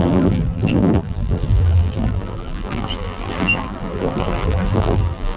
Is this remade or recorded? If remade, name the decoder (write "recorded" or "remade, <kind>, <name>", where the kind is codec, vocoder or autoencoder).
remade, vocoder, BigVGAN v2